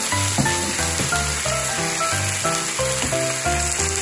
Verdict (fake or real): real